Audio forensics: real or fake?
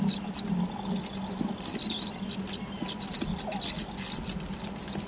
real